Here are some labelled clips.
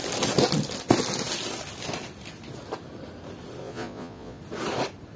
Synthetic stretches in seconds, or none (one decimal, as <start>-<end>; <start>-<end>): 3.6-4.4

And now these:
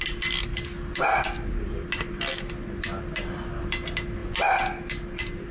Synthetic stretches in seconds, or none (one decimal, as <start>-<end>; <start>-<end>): none

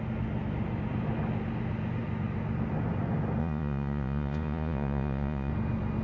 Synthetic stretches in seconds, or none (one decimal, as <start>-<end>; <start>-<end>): 3.4-5.5

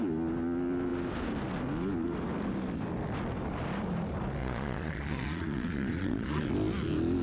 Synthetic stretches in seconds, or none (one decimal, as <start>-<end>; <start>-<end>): 4.4-6.5

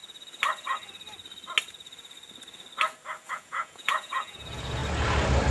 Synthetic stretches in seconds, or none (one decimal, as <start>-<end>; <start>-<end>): 3.3-4.8

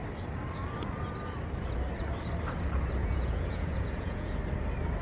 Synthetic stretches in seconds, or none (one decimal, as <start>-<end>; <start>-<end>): 3.0-4.4

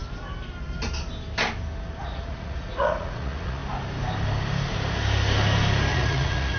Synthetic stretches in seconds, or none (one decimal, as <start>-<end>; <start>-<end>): 2.0-3.6; 5.9-6.6

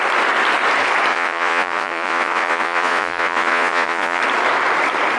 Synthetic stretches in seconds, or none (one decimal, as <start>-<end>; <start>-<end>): 1.1-4.2